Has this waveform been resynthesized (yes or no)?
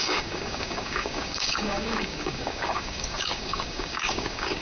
yes